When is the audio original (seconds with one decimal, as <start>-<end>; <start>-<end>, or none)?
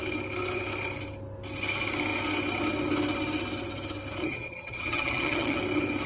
0.0-4.2; 5.6-6.1